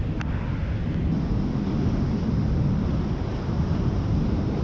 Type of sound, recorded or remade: recorded